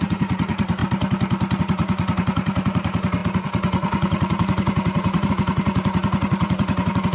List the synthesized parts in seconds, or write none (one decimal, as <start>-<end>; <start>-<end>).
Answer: 0.0-0.8; 1.6-7.1